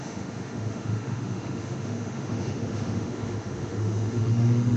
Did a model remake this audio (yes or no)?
yes